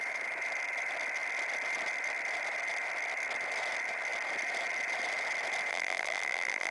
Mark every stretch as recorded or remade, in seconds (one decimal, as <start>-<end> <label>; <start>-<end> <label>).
0.0-5.7 recorded; 5.7-6.7 remade